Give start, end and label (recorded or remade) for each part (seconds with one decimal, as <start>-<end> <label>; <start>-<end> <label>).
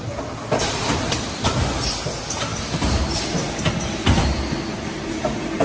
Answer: 0.0-5.6 recorded